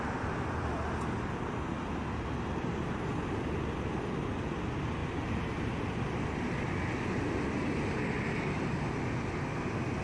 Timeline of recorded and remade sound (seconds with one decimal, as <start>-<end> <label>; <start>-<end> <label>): 0.0-10.0 recorded